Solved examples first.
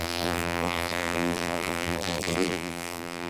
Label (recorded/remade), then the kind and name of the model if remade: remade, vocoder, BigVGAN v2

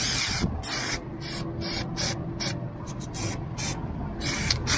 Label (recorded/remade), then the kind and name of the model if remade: remade, vocoder, BigVGAN v2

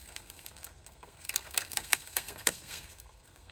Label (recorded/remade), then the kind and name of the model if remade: remade, codec, SNAC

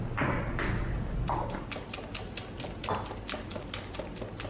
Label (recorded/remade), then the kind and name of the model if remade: recorded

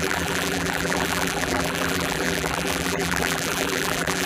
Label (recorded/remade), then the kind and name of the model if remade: remade, vocoder, BigVGAN v2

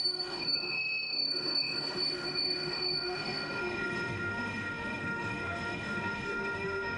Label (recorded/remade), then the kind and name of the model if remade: remade, autoencoder, DAC-VAE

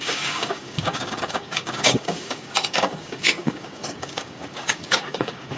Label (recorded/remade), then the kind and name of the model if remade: remade, codec, DAC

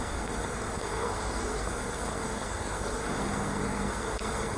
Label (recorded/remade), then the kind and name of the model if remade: remade, codec, SNAC